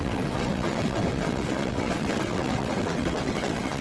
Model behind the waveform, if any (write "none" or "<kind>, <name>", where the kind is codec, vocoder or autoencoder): vocoder, WaveNeXt